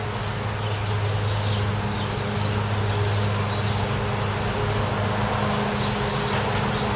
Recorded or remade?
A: recorded